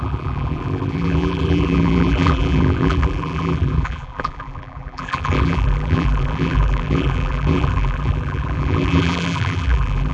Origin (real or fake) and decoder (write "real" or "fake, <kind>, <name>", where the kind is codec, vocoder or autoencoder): fake, vocoder, BigVGAN v2